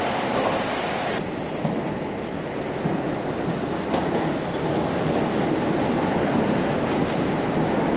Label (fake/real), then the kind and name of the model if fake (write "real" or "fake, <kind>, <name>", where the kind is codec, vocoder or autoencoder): real